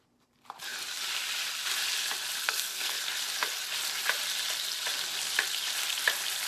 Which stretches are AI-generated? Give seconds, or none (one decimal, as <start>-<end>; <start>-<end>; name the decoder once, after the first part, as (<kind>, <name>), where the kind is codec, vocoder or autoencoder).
2.4-3.0 (codec, SNAC)